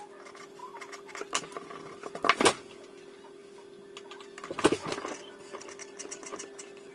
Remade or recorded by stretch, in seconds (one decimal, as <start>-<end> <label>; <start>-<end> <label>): 0.0-6.9 recorded